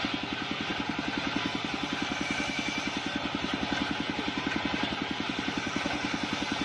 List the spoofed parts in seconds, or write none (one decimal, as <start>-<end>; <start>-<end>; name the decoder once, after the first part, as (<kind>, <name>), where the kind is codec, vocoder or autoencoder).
none